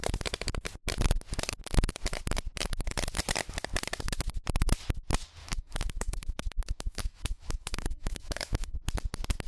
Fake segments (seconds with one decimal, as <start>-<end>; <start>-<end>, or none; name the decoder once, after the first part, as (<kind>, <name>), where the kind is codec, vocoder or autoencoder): 5.4-8.7 (autoencoder, DAC-VAE)

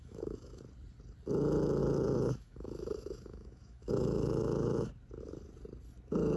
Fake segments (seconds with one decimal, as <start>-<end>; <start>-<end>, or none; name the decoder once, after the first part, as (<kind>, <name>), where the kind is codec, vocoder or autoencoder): 0.0-0.6 (autoencoder, DAC-VAE); 1.8-4.9

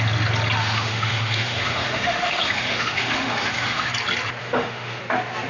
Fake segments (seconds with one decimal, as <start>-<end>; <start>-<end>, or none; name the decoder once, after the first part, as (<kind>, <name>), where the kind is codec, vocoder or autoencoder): 0.6-3.9 (autoencoder, DAC-VAE); 4.4-5.0

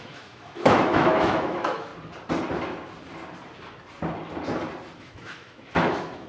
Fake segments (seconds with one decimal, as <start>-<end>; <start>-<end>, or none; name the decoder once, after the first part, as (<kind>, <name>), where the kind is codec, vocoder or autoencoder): 0.0-1.9 (autoencoder, DAC-VAE); 5.0-6.3